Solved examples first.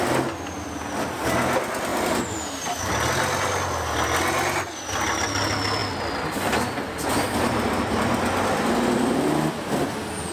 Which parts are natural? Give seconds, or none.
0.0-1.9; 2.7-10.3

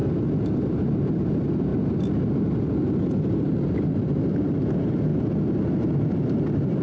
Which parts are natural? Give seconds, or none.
0.0-0.6; 1.7-3.0; 5.1-5.9

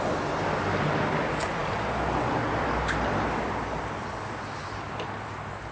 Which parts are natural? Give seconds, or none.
0.0-5.7

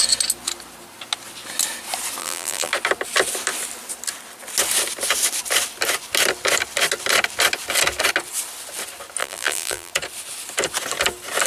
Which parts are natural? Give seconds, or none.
0.0-2.2; 2.7-9.2; 9.9-11.5

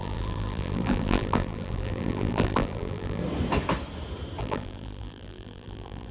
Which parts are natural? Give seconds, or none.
3.2-4.4